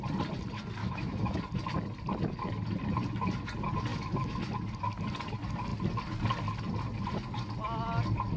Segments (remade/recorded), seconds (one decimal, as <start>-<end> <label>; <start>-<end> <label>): 0.0-0.8 recorded; 0.8-1.4 remade; 1.4-3.9 recorded; 3.9-4.5 remade; 4.5-8.4 recorded